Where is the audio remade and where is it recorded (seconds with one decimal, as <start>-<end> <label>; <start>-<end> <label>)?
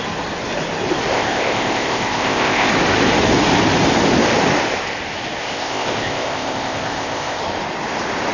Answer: 0.0-1.1 recorded; 1.1-2.7 remade; 2.7-5.4 recorded; 5.4-7.4 remade; 7.4-8.3 recorded